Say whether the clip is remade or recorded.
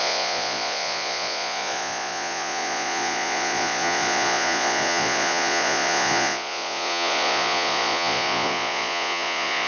remade